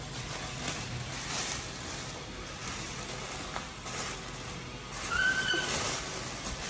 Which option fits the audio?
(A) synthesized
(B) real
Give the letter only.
B